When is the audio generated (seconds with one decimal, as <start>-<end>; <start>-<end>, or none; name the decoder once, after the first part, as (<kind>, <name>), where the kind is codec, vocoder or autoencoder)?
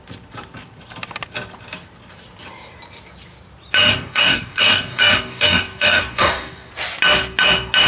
3.9-6.7 (codec, DAC)